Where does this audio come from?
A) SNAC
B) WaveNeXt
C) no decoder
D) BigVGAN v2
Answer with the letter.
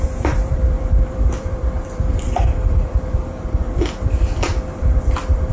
D